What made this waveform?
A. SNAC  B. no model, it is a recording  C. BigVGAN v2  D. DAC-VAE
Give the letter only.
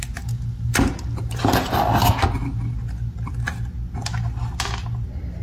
B